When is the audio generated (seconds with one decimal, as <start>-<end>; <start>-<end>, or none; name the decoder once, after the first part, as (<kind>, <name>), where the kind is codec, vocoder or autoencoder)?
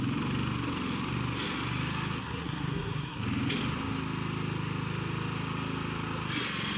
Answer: 2.2-3.2 (codec, SNAC)